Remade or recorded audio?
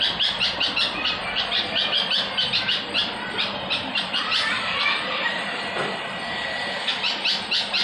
remade